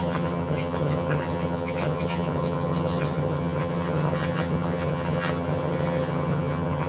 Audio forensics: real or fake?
fake